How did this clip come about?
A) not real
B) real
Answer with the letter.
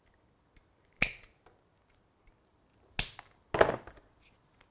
B